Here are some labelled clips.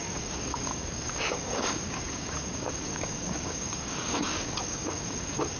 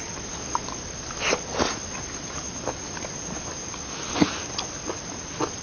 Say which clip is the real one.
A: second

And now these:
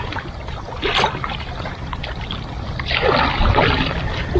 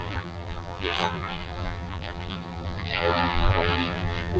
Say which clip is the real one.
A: first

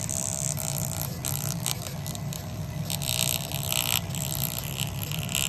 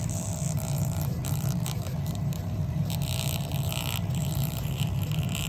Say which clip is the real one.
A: first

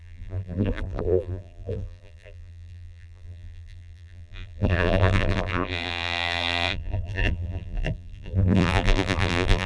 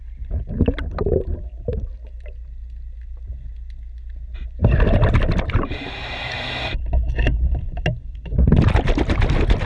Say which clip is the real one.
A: second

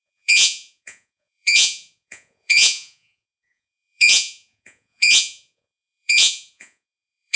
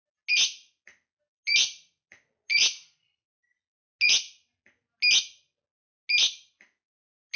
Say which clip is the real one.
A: second